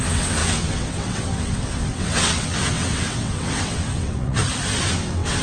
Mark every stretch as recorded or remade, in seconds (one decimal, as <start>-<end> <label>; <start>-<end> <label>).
0.0-4.4 remade; 4.4-4.9 recorded; 4.9-5.4 remade